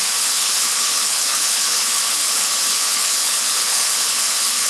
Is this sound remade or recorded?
remade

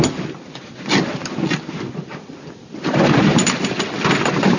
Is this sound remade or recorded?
recorded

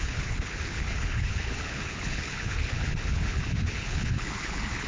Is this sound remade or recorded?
remade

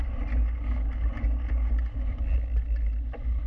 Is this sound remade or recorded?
recorded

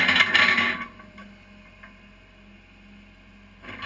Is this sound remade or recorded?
recorded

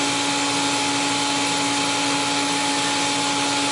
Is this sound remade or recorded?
recorded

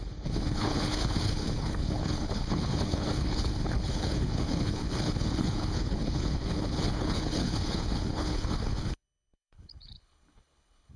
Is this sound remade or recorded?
remade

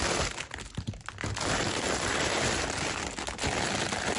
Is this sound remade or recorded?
recorded